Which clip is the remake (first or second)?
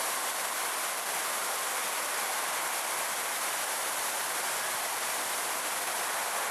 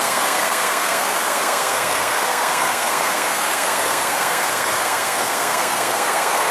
second